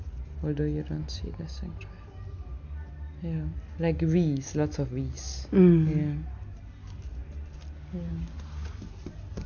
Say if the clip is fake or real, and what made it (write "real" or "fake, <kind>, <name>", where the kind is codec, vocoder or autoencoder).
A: real